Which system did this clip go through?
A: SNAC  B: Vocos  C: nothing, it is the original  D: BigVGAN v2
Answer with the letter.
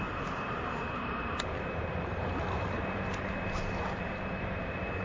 D